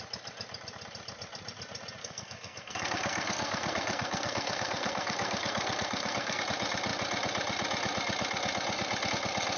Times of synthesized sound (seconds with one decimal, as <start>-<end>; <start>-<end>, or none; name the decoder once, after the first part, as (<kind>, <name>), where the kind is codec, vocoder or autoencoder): 2.0-6.4 (codec, SNAC)